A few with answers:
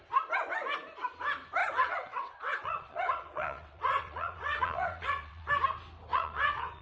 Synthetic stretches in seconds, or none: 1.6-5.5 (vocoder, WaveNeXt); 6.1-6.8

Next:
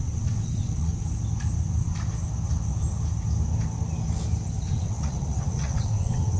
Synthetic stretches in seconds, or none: 0.0-0.9 (vocoder, WaveNeXt); 4.7-6.4

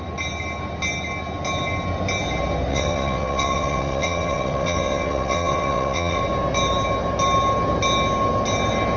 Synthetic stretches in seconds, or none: 2.7-6.2 (vocoder, WaveNeXt)

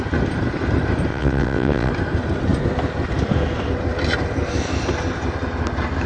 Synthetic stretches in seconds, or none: 1.1-1.9 (vocoder, WaveNeXt)

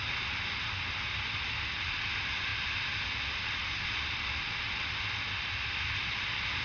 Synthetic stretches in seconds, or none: none

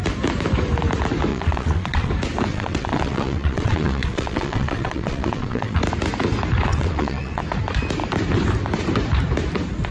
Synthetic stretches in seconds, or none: 1.3-2.1 (vocoder, WaveNeXt); 2.5-5.8; 6.7-7.4